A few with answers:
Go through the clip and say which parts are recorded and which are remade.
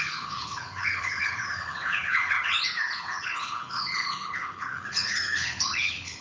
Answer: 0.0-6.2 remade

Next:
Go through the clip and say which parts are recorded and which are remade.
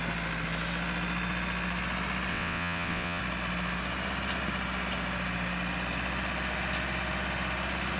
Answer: 0.0-2.3 recorded; 2.3-3.2 remade; 3.2-8.0 recorded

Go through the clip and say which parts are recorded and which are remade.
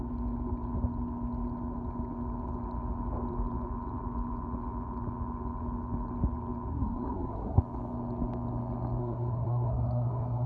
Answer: 0.0-6.7 recorded; 6.7-7.6 remade; 7.6-9.0 recorded; 9.0-10.5 remade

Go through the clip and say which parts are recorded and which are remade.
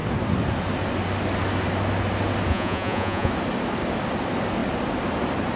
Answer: 0.0-2.5 recorded; 2.5-3.3 remade; 3.3-5.6 recorded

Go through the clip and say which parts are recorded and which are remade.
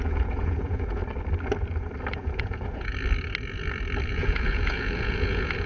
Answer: 0.0-1.0 remade; 1.0-2.1 recorded; 2.1-2.9 remade; 2.9-4.1 recorded; 4.1-5.7 remade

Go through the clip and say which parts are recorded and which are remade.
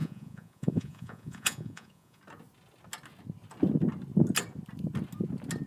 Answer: 0.0-2.2 remade; 2.2-5.7 recorded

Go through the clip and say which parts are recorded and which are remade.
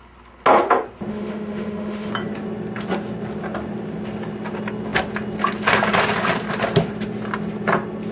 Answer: 0.0-1.1 recorded; 1.1-2.1 remade; 2.1-8.1 recorded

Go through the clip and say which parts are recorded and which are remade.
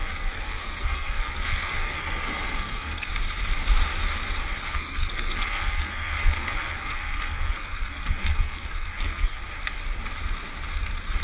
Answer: 0.0-3.1 remade; 3.1-4.6 recorded; 4.6-9.4 remade; 9.4-11.2 recorded